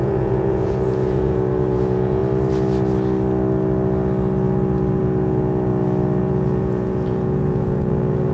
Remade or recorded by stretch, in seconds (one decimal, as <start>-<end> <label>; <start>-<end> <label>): 0.0-2.2 remade; 2.2-5.0 recorded; 5.0-5.7 remade; 5.7-6.2 recorded; 6.2-8.3 remade